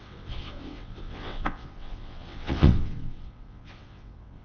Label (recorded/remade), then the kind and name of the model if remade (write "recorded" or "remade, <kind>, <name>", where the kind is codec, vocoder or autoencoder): remade, vocoder, WaveNeXt